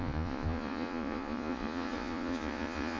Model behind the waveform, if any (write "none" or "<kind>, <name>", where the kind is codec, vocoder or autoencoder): vocoder, Vocos